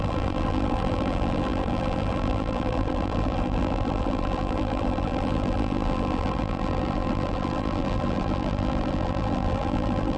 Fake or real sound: fake